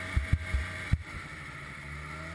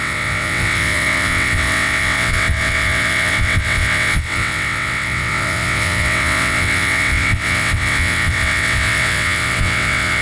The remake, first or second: second